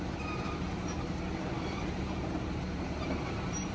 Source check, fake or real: fake